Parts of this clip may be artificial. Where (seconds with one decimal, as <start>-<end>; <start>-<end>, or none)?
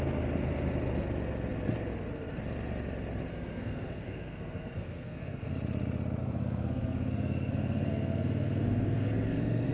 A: 3.3-5.5; 6.2-9.7